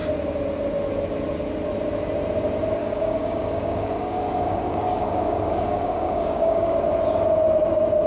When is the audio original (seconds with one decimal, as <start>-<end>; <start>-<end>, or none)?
0.0-2.8; 6.8-8.1